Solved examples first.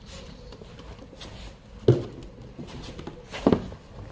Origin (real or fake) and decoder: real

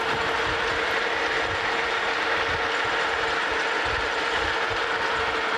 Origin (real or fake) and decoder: real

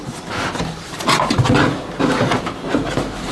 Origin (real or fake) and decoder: real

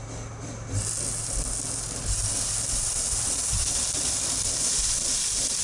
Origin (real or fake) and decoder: real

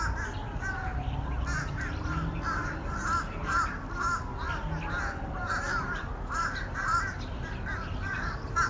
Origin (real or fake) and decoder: real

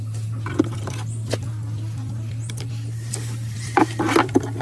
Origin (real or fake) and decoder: real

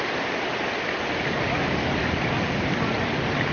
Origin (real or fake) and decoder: fake, vocoder, BigVGAN v2